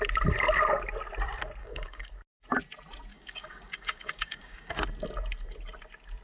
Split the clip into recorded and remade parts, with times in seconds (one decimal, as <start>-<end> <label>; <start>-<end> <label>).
0.0-1.6 recorded; 1.6-2.1 remade; 2.1-3.1 recorded; 3.1-4.7 remade; 4.7-6.2 recorded